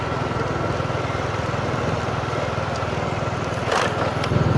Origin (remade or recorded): recorded